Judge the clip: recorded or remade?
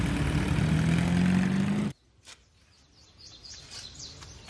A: recorded